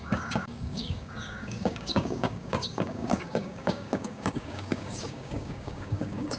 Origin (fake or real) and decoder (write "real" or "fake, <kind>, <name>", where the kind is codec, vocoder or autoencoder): fake, codec, DAC